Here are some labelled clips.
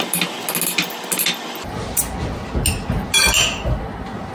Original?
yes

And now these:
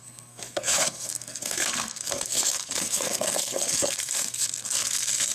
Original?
no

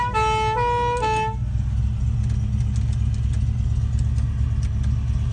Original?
yes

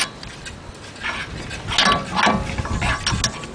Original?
yes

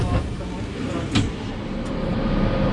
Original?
yes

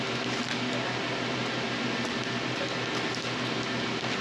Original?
yes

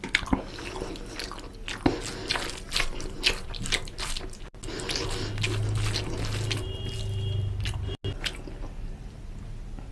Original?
yes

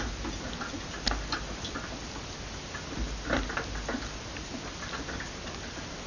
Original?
yes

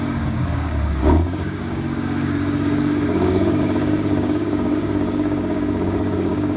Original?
no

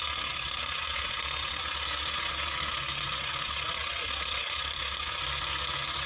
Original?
yes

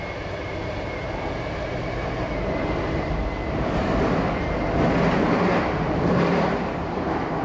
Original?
yes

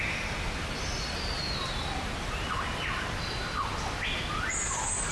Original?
yes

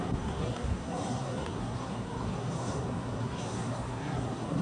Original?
no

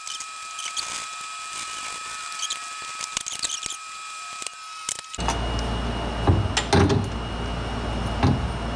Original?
yes